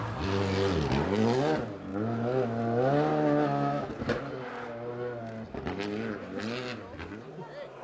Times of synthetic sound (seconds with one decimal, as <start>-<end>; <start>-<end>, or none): none